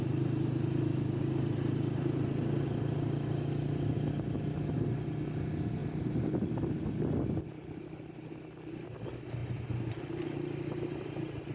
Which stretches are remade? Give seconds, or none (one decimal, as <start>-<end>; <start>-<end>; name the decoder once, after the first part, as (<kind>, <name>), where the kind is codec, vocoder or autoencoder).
5.8-7.0 (vocoder, BigVGAN v2)